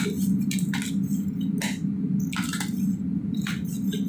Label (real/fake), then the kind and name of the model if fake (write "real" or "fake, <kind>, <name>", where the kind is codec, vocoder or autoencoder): real